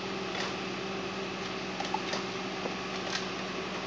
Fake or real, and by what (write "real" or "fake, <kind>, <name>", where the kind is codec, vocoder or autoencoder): real